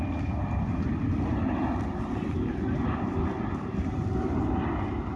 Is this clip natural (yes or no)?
yes